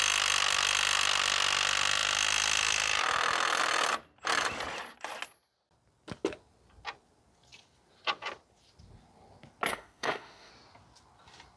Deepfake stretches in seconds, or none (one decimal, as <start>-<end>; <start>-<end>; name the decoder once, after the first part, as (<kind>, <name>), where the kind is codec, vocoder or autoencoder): 9.7-10.5 (autoencoder, DAC-VAE)